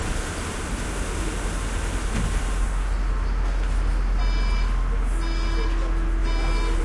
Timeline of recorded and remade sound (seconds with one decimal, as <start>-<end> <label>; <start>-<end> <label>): 0.0-6.8 recorded